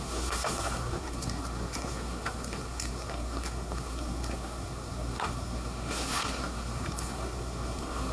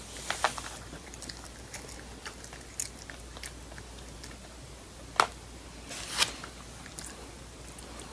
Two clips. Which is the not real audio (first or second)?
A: first